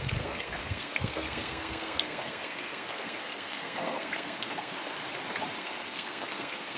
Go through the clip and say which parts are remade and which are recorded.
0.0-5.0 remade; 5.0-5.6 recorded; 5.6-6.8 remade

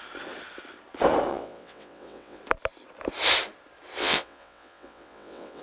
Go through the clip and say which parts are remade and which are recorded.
0.0-1.3 recorded; 1.3-2.4 remade; 2.4-4.0 recorded; 4.0-5.6 remade

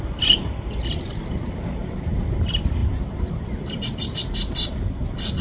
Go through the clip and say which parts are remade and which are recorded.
0.0-5.4 remade